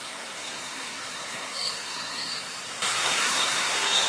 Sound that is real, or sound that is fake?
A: fake